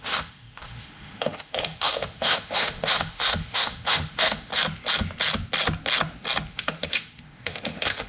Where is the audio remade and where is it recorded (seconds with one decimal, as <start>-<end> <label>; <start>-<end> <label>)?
0.0-4.5 remade; 4.5-6.5 recorded; 6.5-8.1 remade